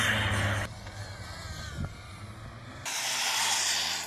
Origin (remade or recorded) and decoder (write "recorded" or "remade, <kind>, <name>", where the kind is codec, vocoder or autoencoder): recorded